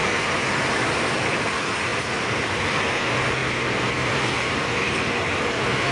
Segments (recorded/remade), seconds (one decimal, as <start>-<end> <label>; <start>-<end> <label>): 0.0-1.4 remade; 1.4-1.9 recorded; 1.9-2.5 remade; 2.5-3.4 recorded; 3.4-4.7 remade; 4.7-5.9 recorded